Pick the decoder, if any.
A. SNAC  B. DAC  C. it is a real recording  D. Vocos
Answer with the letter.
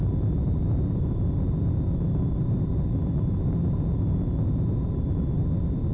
C